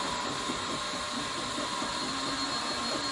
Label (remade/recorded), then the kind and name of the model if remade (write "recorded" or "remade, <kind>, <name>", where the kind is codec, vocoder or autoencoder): recorded